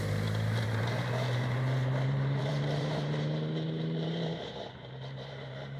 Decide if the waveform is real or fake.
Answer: fake